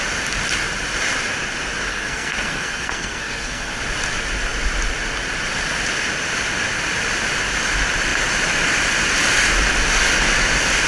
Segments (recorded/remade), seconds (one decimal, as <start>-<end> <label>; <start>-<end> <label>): 0.0-1.9 recorded; 1.9-3.8 remade; 3.8-10.9 recorded